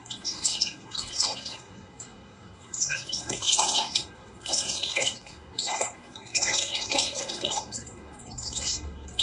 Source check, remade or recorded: remade